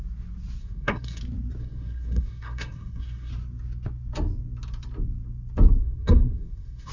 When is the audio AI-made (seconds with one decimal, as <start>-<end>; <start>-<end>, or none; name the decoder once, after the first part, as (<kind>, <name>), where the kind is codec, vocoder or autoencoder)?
0.6-1.2 (codec, SNAC); 1.6-3.3; 5.8-6.9

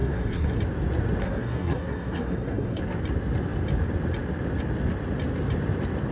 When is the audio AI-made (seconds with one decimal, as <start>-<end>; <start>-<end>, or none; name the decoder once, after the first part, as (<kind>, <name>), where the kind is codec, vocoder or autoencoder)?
0.0-0.6 (codec, SNAC); 1.2-2.8